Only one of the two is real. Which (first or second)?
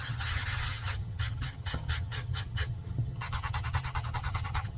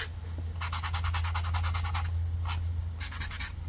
second